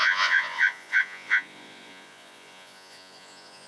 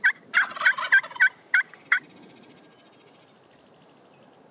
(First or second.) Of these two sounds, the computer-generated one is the first